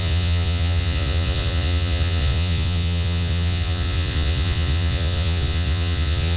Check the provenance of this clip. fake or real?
fake